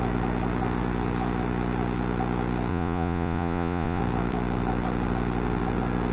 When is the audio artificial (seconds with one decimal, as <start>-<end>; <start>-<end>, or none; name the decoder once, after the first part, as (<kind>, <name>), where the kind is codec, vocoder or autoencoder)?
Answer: 2.7-4.0 (vocoder, Vocos)